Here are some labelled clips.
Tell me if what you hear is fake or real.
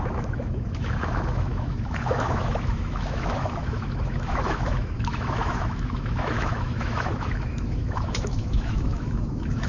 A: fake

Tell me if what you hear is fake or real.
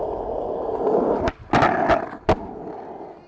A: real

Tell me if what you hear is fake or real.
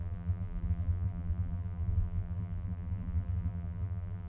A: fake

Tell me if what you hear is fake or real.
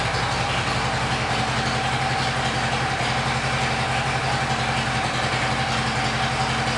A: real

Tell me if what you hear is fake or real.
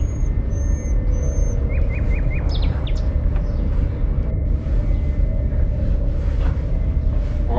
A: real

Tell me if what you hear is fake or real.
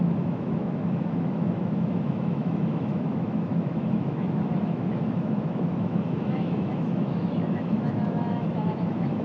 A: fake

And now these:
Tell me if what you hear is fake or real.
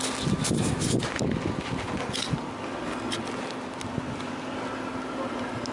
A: real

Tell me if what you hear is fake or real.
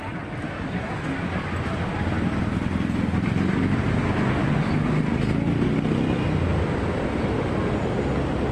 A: real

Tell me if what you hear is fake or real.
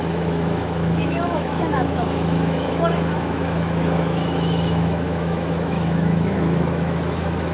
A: fake